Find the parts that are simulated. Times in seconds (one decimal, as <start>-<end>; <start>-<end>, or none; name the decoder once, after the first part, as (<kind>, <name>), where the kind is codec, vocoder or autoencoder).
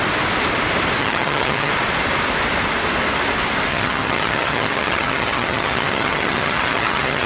1.0-1.7 (vocoder, HiFi-GAN); 3.7-7.3